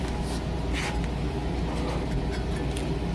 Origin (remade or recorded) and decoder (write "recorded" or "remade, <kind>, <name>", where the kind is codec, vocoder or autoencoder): recorded